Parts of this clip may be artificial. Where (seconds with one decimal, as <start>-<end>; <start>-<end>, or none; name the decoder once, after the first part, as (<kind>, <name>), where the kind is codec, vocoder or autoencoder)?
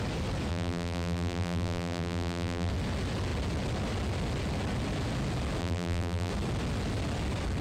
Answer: 0.5-2.7 (vocoder, BigVGAN v2); 5.6-6.3